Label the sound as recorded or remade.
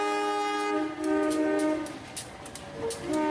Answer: recorded